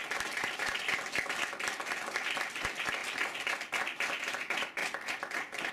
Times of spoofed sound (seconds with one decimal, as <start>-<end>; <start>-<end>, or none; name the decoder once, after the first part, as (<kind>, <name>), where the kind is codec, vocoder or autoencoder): none